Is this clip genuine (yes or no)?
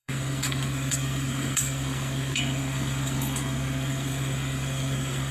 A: no